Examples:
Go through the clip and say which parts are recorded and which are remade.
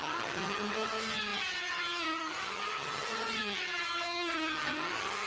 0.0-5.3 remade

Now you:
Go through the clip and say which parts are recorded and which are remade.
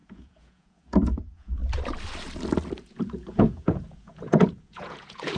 0.0-1.6 remade; 1.6-2.8 recorded; 2.8-5.4 remade